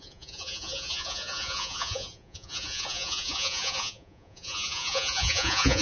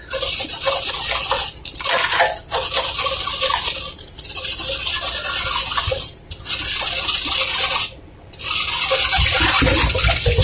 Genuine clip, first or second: second